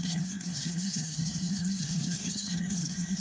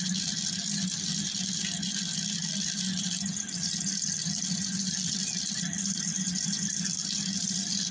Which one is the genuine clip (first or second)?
second